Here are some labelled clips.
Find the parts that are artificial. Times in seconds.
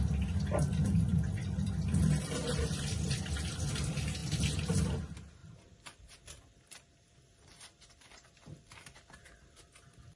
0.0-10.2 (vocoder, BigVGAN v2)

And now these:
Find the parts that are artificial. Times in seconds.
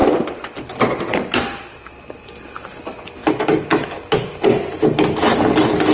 1.9-3.2 (vocoder, BigVGAN v2); 5.2-5.9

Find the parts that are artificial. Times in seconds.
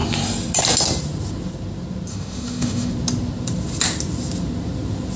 2.1-2.9 (autoencoder, DAC-VAE)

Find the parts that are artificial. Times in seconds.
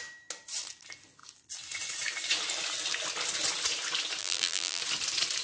4.2-4.8 (vocoder, BigVGAN v2)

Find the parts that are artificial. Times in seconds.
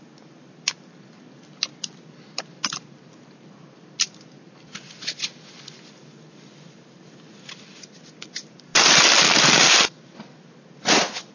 none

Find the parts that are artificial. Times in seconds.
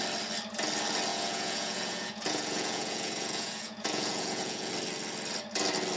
1.1-4.7 (vocoder, Vocos)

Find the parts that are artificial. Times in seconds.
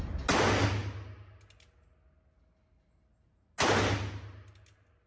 none